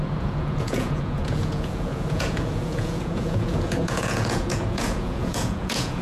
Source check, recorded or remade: remade